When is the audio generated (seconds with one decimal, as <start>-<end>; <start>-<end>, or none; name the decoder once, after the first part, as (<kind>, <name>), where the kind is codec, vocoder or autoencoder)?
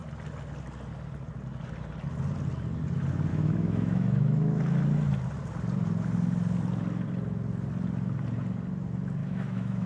3.3-4.6 (autoencoder, DAC-VAE); 9.2-9.9